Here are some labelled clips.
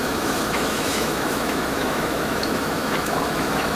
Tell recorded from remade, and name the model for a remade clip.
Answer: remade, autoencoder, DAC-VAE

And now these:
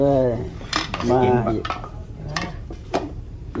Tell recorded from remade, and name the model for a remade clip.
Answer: remade, vocoder, BigVGAN v2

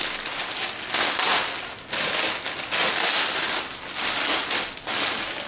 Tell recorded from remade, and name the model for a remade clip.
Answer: recorded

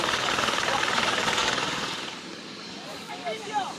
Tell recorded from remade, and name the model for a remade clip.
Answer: remade, codec, DAC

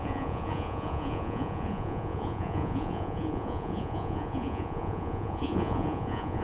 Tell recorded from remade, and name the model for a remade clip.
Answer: remade, vocoder, Vocos